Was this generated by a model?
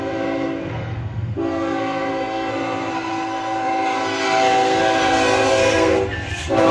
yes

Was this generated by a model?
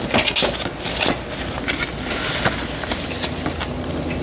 no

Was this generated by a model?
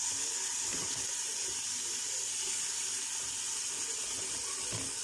no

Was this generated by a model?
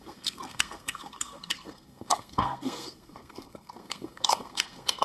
yes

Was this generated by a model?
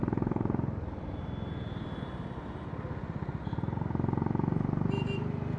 no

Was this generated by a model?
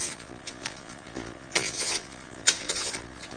yes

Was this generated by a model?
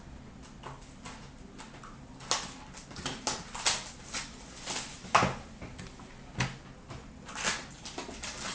no